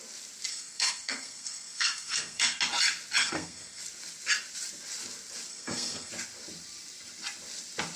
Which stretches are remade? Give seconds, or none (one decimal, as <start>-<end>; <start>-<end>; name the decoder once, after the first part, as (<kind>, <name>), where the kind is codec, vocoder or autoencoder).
0.5-2.6 (codec, SNAC); 3.2-3.8; 5.5-6.1